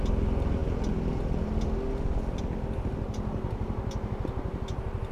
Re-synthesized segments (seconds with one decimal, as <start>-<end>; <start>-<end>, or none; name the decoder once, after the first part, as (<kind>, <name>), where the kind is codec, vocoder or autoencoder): none